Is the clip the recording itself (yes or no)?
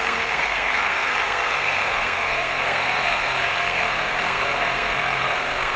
no